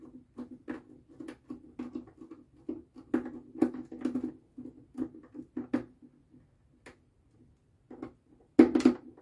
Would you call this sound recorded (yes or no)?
yes